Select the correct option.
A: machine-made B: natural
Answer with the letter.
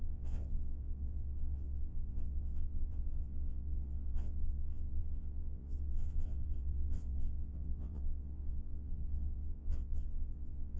A